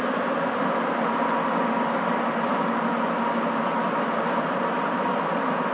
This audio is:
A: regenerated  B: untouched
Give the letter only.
B